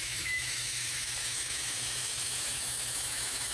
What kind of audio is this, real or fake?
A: fake